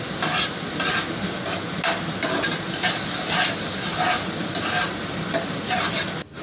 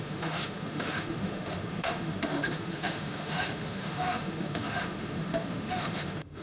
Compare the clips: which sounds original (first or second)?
first